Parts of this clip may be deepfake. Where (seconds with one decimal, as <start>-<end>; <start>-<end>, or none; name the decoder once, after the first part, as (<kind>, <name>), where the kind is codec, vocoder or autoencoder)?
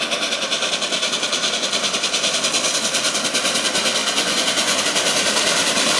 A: 4.0-4.8 (vocoder, Vocos)